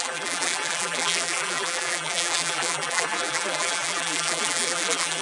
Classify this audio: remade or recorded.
remade